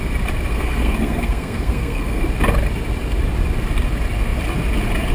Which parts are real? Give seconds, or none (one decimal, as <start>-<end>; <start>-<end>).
0.0-0.5; 2.2-5.1

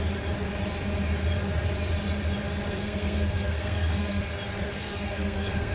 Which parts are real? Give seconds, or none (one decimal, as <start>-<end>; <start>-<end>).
0.0-2.7; 4.2-4.7

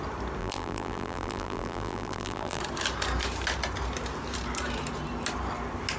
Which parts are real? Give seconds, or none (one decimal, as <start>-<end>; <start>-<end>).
0.0-0.4; 2.6-6.0